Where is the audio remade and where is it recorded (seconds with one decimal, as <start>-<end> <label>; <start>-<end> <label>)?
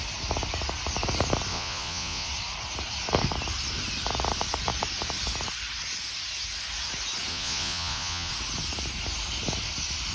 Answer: 0.0-1.5 recorded; 1.5-2.3 remade; 2.3-7.3 recorded; 7.3-8.3 remade; 8.3-10.1 recorded